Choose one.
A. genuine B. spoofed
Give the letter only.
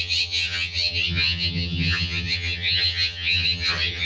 B